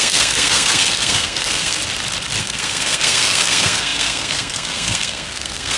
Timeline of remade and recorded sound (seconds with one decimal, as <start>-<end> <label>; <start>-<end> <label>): 0.0-1.8 remade; 1.8-2.4 recorded; 2.4-5.8 remade